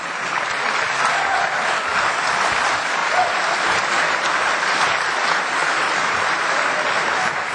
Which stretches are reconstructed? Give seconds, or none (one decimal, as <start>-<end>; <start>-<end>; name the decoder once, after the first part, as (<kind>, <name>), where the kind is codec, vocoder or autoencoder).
5.6-6.4 (vocoder, BigVGAN v2)